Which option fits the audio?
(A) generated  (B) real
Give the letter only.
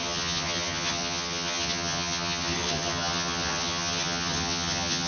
A